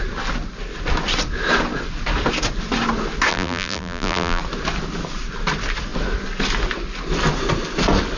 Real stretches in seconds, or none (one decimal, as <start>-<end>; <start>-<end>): 0.0-3.3; 4.4-8.2